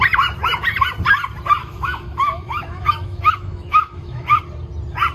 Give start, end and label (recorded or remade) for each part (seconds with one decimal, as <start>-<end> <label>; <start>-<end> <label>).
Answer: 0.0-1.6 recorded; 1.6-4.4 remade; 4.4-5.1 recorded